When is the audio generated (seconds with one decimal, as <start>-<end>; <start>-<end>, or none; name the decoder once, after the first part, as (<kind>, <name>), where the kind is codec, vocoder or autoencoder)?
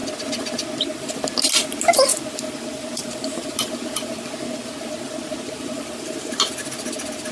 2.1-6.5 (vocoder, BigVGAN v2)